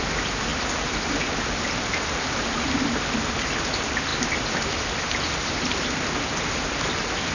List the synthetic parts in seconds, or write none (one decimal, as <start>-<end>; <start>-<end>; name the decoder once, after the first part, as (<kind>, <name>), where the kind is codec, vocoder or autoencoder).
none